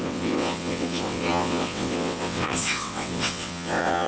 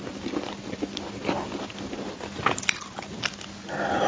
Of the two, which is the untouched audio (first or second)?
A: second